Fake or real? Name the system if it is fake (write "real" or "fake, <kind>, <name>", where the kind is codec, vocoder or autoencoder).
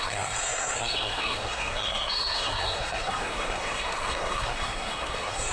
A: fake, codec, SNAC